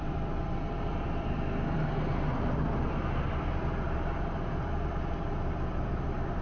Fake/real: fake